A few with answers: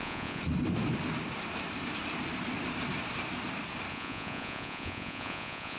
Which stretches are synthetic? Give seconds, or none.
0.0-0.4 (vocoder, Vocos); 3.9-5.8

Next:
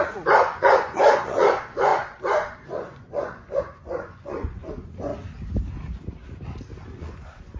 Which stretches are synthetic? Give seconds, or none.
0.0-5.1 (vocoder, Vocos); 7.0-7.6

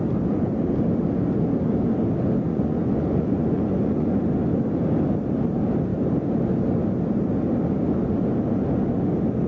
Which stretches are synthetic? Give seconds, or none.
2.5-4.2 (vocoder, Vocos)

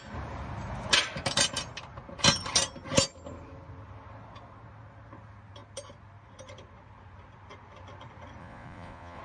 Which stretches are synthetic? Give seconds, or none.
8.4-9.2 (vocoder, Vocos)

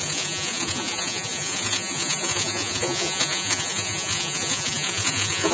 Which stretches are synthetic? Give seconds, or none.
0.0-5.5 (vocoder, Vocos)